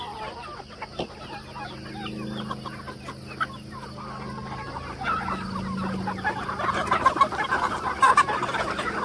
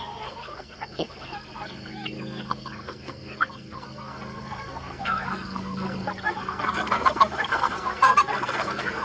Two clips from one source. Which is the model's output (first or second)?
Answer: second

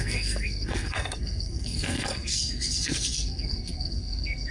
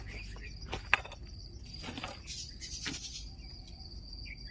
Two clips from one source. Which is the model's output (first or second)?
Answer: first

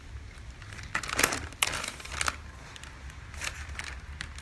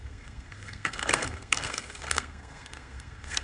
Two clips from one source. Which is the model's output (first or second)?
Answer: second